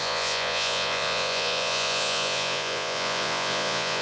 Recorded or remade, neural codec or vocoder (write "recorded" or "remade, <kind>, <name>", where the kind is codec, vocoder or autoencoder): remade, vocoder, Vocos